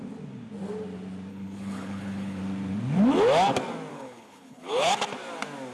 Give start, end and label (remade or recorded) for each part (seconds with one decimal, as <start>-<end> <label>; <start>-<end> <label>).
0.0-1.3 recorded; 1.3-2.4 remade; 2.4-3.9 recorded; 3.9-4.9 remade; 4.9-5.7 recorded